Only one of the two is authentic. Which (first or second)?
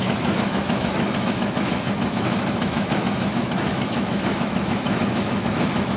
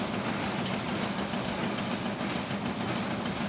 second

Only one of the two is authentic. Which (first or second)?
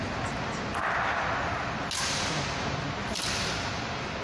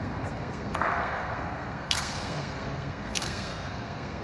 first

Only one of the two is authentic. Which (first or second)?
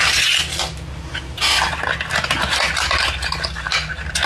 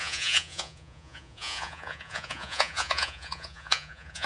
first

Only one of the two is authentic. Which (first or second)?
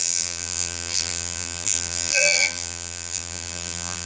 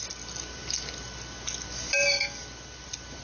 second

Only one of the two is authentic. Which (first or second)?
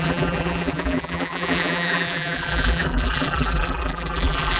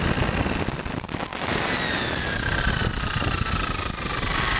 second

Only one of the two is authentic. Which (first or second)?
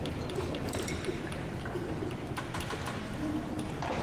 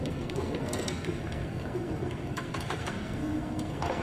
first